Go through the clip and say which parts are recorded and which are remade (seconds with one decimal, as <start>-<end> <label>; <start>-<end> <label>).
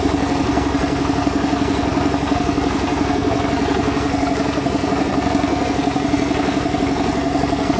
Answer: 0.0-7.8 remade